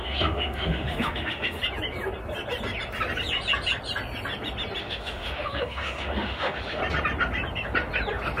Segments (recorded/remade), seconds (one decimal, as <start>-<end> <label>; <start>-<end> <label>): 0.0-1.6 remade; 1.6-4.8 recorded; 4.8-6.8 remade; 6.8-8.4 recorded

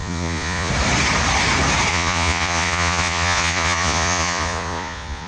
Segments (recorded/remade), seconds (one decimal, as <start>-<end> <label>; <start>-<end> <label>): 0.0-0.7 remade; 0.7-1.9 recorded; 1.9-5.3 remade

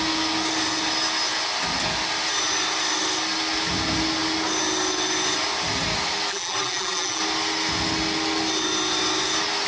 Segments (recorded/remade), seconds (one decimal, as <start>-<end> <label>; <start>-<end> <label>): 0.0-6.3 recorded; 6.3-7.2 remade; 7.2-9.7 recorded

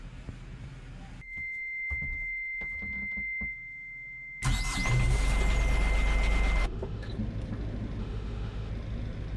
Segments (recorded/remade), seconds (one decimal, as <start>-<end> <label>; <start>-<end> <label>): 0.0-6.6 recorded; 6.6-7.1 remade; 7.1-8.0 recorded; 8.0-8.7 remade; 8.7-9.4 recorded

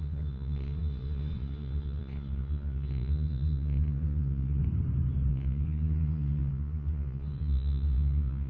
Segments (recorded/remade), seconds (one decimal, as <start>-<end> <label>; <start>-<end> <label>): 0.0-4.6 remade; 4.6-5.3 recorded; 5.3-8.5 remade